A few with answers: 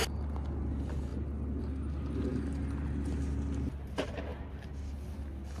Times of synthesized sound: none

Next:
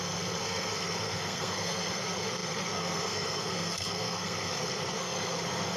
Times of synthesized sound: 0.0-5.8 (codec, SNAC)

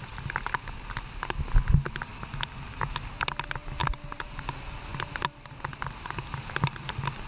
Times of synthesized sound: none

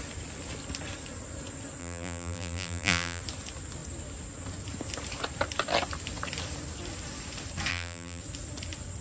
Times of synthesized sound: 1.8-3.2 (vocoder, BigVGAN v2); 7.7-8.2

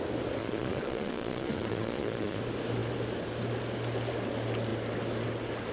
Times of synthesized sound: 0.4-2.4 (vocoder, Vocos)

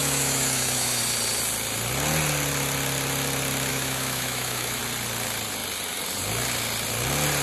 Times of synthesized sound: 0.0-1.0 (autoencoder, DAC-VAE); 3.7-4.8

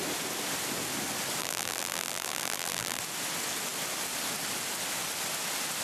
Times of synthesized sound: 1.4-3.0 (vocoder, BigVGAN v2)

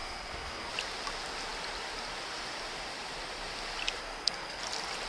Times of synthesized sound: 0.0-0.7 (codec, SNAC); 4.0-4.6